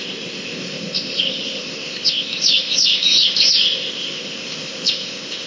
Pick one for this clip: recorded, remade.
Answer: remade